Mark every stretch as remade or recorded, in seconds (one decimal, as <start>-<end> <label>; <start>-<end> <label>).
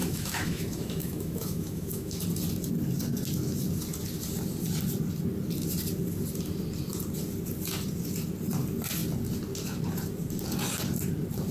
0.0-2.2 remade; 2.2-11.5 recorded